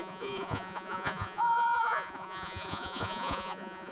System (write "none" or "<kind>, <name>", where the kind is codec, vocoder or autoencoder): vocoder, Vocos